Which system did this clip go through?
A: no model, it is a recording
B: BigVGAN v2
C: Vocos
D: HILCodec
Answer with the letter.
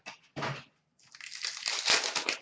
A